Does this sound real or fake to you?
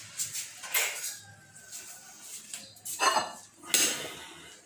real